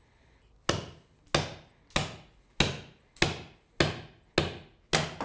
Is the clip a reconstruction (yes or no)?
no